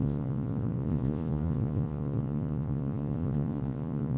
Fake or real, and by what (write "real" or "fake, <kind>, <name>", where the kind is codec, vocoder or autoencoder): fake, vocoder, Vocos